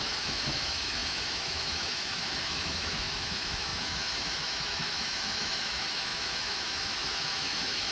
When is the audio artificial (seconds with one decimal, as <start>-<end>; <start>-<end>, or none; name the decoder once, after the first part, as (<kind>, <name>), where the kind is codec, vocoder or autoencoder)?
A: 0.0-7.9 (autoencoder, DAC-VAE)